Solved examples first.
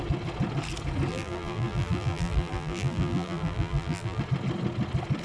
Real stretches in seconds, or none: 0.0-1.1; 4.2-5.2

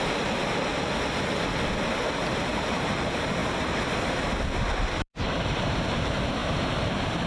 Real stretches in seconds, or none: 0.7-2.3; 3.4-4.6

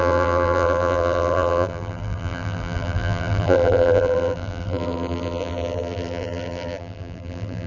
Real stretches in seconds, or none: none

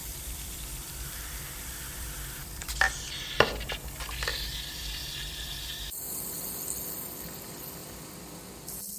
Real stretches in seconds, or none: 2.7-7.8; 8.5-9.0

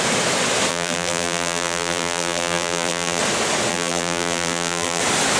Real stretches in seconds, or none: 0.0-0.7; 3.2-3.7; 5.0-5.4

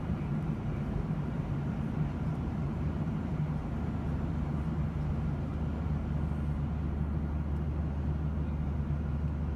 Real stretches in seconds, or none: 3.6-5.1; 5.5-9.6

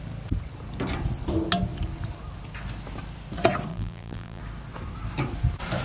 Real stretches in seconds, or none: 0.0-3.7; 4.4-5.8